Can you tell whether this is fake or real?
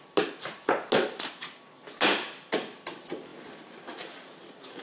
real